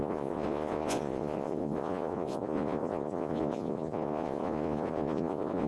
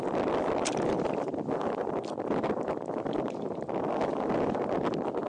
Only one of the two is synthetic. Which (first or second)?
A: first